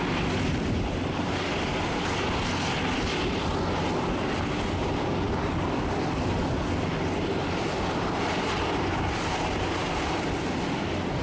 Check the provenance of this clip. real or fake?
real